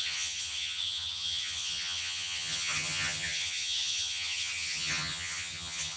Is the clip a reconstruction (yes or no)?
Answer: yes